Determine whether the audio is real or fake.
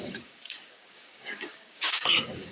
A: fake